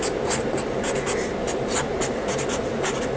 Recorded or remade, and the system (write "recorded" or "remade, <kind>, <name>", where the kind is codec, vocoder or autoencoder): remade, vocoder, BigVGAN v2